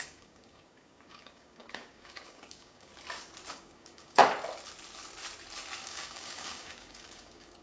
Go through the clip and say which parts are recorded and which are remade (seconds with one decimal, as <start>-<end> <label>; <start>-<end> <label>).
0.0-2.9 remade; 2.9-3.5 recorded; 3.5-4.2 remade; 4.2-5.8 recorded; 5.8-7.6 remade